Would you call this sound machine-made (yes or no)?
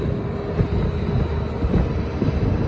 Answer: no